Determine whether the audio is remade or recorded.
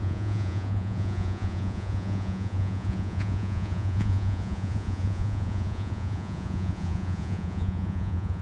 remade